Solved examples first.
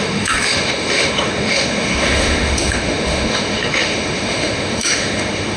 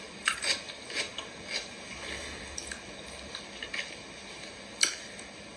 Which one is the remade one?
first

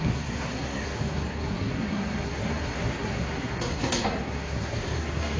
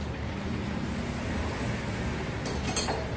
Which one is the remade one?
first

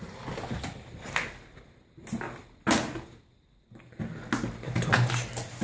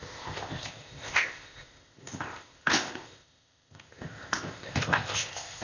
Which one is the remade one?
second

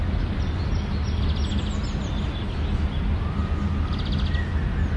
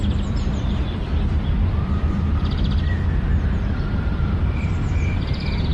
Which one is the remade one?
second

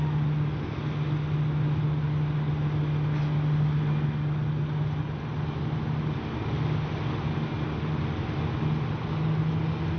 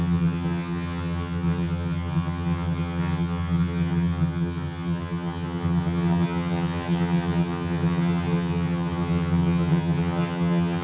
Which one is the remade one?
second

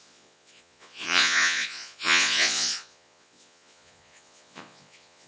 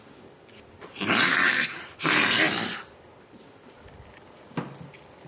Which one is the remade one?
first